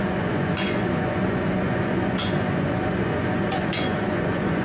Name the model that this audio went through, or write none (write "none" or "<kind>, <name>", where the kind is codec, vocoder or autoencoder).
vocoder, Vocos